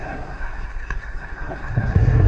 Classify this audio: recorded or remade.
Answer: remade